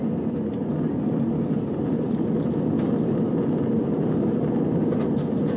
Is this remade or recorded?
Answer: recorded